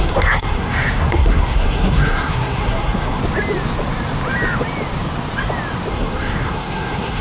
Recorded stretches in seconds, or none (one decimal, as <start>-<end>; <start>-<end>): 3.2-5.9